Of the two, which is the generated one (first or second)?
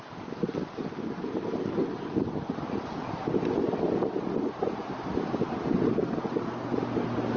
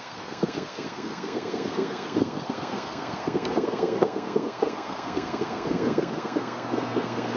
second